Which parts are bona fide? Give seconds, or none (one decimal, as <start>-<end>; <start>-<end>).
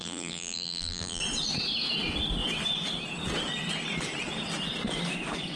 1.2-5.6